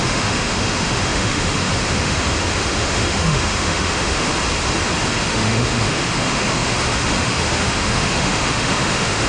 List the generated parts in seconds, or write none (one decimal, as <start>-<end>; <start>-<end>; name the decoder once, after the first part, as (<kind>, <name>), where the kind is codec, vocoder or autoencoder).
0.0-4.3 (autoencoder, DAC-VAE); 5.2-9.3